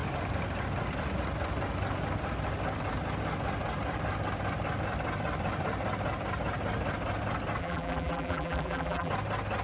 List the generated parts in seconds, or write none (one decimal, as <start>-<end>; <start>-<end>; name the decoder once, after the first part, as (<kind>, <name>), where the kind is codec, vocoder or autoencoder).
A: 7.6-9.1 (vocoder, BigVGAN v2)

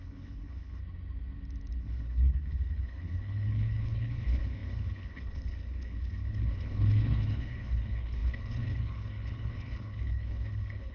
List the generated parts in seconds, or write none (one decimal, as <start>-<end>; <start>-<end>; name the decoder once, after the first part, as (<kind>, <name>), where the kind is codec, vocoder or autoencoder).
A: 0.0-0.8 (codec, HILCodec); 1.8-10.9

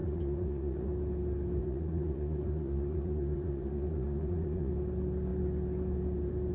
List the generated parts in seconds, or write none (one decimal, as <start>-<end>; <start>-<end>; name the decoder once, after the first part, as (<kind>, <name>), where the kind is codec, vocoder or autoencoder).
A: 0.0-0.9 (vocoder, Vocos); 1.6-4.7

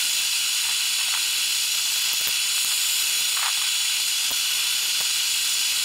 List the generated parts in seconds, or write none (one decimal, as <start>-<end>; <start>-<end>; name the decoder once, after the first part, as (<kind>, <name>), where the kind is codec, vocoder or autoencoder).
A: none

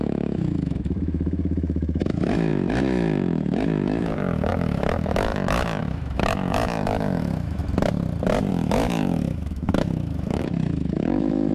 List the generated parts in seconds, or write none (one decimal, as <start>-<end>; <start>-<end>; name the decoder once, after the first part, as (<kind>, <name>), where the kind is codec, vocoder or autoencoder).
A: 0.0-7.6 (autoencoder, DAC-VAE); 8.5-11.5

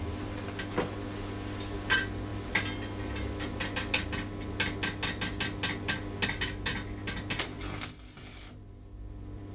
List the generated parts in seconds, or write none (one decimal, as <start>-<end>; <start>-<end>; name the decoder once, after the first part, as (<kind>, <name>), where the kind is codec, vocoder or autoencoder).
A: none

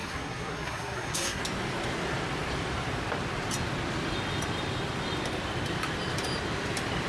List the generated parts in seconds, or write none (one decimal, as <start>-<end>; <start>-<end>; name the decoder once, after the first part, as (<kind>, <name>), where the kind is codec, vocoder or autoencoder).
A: 0.0-1.4 (codec, SNAC)